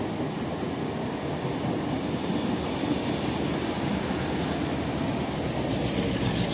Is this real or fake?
real